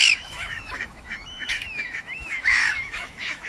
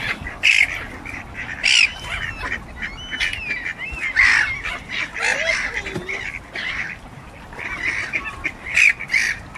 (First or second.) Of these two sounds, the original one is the second